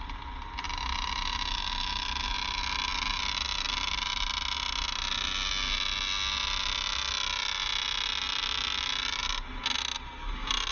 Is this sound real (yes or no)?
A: yes